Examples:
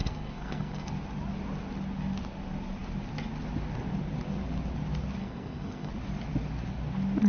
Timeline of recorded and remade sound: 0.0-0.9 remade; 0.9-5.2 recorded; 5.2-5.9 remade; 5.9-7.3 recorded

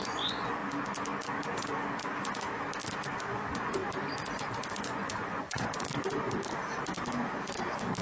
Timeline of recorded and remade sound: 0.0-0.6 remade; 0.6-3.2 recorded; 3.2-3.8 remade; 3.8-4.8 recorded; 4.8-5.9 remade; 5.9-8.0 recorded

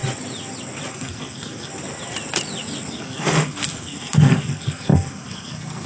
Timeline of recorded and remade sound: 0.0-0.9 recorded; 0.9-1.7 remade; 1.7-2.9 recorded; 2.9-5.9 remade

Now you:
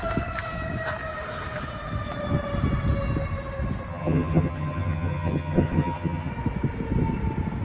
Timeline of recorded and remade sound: 0.0-3.9 recorded; 3.9-6.3 remade; 6.3-7.6 recorded

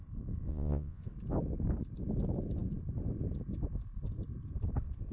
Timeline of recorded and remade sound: 0.0-0.5 recorded; 0.5-1.0 remade; 1.0-5.1 recorded